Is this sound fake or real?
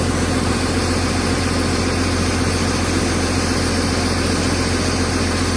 real